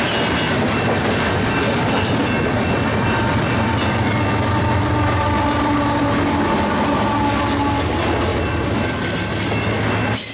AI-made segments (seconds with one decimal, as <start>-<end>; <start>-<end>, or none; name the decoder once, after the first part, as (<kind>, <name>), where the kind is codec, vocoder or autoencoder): 2.9-6.5 (vocoder, BigVGAN v2); 8.3-9.0